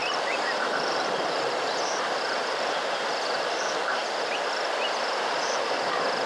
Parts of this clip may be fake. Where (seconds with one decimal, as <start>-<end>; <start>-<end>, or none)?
0.0-4.0